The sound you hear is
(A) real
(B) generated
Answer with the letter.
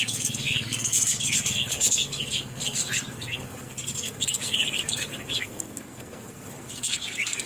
B